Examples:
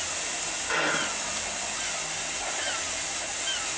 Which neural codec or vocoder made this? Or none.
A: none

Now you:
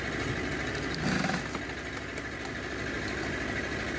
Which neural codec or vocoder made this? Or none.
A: none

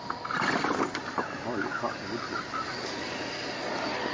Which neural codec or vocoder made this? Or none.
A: none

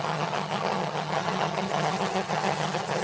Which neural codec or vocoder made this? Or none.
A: vocoder, HiFi-GAN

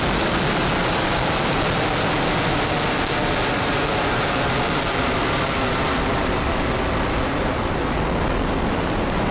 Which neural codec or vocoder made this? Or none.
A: none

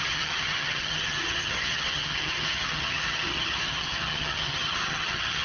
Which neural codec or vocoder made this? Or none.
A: vocoder, HiFi-GAN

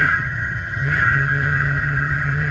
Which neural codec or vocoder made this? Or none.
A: vocoder, HiFi-GAN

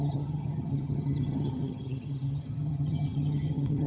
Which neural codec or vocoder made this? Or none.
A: vocoder, HiFi-GAN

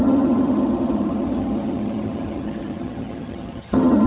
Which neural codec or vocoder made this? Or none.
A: vocoder, HiFi-GAN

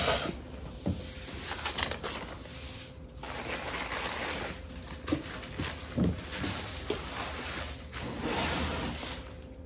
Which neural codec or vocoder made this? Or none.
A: none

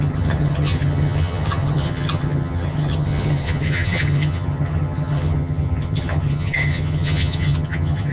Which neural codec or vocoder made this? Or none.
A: vocoder, HiFi-GAN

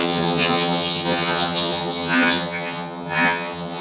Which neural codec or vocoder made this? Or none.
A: vocoder, HiFi-GAN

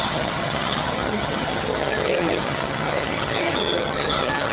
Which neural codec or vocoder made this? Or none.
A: vocoder, HiFi-GAN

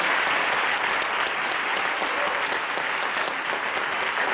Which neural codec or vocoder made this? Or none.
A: none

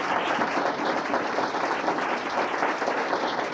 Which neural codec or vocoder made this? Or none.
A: none